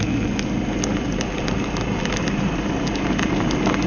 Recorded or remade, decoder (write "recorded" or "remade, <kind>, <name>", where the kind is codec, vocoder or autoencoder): recorded